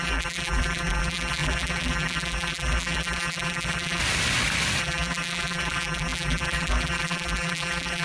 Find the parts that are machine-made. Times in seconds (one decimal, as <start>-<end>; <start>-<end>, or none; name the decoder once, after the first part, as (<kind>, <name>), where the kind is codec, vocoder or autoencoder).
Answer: 0.0-4.0 (vocoder, BigVGAN v2); 4.8-8.0